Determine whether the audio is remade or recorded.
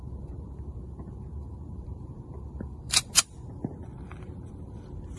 remade